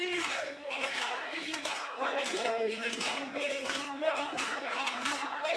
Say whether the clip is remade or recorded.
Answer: remade